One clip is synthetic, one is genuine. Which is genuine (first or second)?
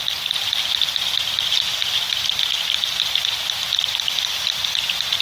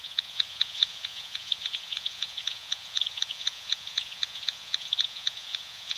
first